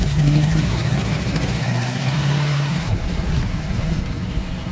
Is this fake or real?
fake